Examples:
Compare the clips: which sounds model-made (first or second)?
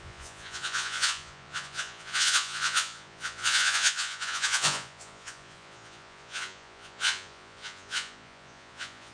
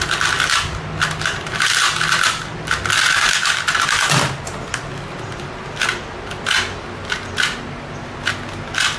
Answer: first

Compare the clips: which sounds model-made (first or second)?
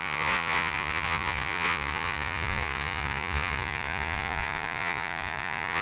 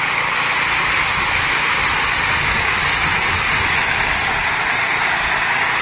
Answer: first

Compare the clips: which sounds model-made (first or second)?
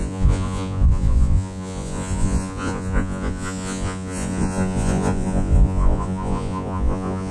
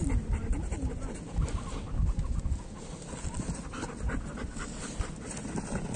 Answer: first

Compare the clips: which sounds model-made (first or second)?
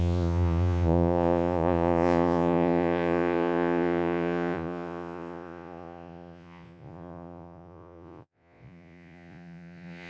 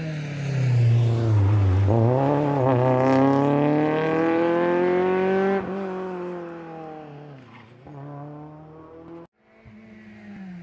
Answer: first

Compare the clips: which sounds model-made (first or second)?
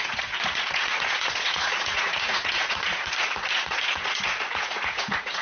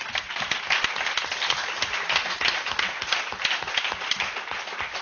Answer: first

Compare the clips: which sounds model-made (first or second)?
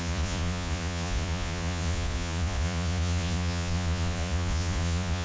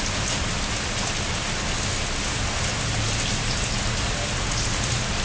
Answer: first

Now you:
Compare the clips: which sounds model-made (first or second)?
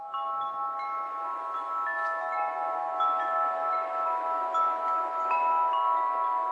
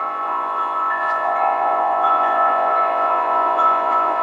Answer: second